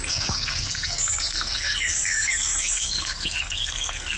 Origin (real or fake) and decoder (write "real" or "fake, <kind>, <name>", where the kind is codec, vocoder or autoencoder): fake, codec, SNAC